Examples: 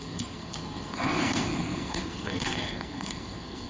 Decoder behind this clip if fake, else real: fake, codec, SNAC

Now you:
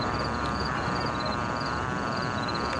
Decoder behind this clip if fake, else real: real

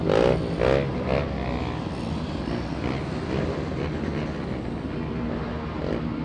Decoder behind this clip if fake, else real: real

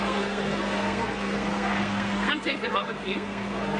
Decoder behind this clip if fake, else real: fake, codec, SNAC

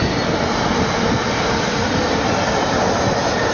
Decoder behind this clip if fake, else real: real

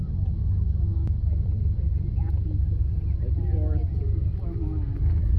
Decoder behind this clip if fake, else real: real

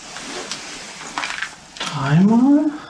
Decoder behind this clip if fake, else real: real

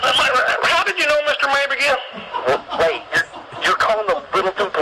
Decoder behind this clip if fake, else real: real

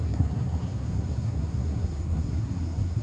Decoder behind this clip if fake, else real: fake, codec, SNAC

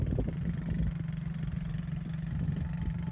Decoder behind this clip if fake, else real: real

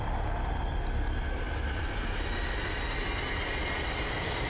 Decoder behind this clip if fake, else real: real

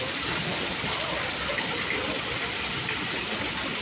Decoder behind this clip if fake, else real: real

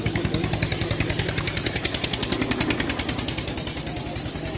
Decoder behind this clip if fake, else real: real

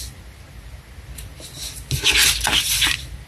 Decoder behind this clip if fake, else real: real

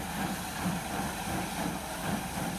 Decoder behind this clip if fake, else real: real